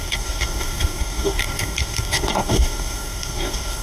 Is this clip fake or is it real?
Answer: fake